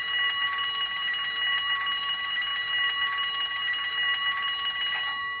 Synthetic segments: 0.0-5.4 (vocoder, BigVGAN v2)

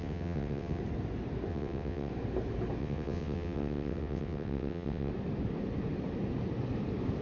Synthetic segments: 0.0-0.8 (vocoder, WaveNeXt); 1.5-2.1; 2.8-5.1